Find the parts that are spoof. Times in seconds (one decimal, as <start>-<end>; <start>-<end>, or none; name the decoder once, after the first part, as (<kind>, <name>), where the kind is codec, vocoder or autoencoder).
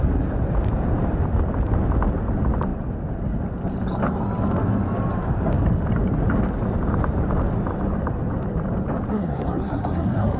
9.1-10.4 (codec, SNAC)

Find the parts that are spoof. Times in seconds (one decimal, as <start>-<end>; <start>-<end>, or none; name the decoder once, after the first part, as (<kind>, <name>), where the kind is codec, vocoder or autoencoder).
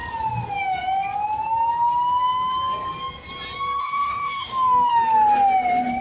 3.8-4.9 (codec, DAC)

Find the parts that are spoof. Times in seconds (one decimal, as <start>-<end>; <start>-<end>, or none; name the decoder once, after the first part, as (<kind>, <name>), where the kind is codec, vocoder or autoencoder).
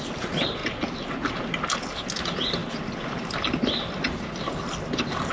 0.0-0.6 (vocoder, BigVGAN v2); 2.2-5.3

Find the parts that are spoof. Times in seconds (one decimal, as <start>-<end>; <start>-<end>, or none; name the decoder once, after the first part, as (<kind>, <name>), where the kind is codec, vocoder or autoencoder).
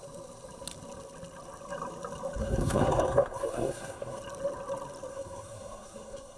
2.4-4.2 (codec, SNAC); 5.1-6.4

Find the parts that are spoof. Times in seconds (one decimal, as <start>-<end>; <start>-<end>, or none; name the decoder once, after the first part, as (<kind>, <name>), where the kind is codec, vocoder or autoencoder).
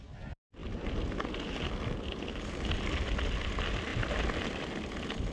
0.6-1.5 (vocoder, BigVGAN v2); 3.9-4.6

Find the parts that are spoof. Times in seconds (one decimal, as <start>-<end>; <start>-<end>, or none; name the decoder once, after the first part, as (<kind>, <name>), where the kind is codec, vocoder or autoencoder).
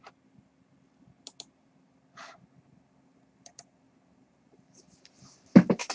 none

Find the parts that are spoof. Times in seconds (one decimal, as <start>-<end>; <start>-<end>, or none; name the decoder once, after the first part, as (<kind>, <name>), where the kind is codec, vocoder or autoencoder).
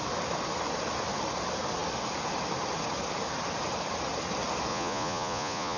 4.7-5.8 (vocoder, Vocos)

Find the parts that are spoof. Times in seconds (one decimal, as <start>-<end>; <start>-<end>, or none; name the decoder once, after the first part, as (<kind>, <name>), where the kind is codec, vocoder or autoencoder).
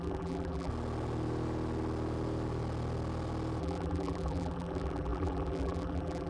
0.0-0.7 (vocoder, BigVGAN v2); 3.6-6.3